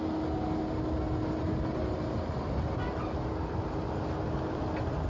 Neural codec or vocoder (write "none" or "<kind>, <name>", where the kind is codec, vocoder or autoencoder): none